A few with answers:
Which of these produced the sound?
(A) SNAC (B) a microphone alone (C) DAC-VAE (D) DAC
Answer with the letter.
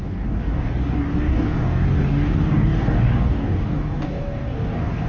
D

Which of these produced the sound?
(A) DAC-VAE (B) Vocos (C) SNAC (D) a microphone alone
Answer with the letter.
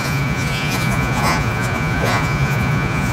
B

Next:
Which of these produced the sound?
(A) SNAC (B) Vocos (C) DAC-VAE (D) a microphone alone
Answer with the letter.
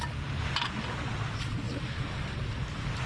D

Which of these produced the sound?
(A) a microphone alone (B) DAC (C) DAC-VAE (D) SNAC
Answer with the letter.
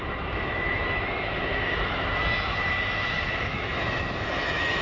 C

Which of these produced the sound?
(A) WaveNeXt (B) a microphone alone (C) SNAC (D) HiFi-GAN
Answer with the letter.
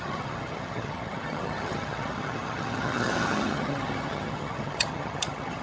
D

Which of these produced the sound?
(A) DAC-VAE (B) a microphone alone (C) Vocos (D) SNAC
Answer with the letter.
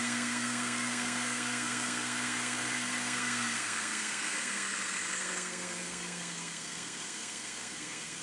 D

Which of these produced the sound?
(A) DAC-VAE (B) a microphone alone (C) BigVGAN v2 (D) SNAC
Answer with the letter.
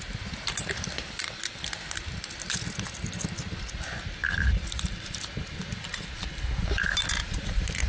B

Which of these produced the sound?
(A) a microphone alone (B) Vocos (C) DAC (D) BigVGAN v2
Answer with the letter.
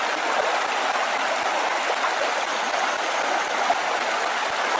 A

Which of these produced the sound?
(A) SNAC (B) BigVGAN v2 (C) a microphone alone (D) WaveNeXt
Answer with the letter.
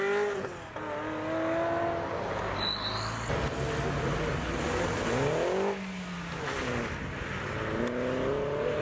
C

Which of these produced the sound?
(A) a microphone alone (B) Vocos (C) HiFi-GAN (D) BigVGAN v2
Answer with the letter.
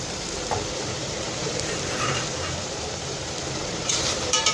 D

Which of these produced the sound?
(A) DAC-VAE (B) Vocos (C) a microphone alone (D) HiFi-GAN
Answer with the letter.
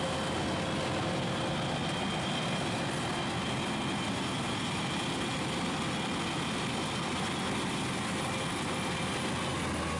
C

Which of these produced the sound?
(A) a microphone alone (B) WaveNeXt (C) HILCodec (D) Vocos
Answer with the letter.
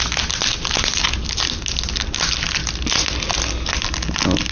A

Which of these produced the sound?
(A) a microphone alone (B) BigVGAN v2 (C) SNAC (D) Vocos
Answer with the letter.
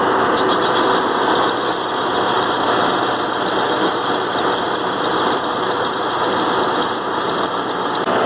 A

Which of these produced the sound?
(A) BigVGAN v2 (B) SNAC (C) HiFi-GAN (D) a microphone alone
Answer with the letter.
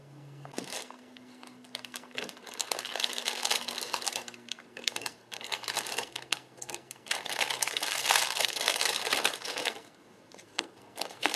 B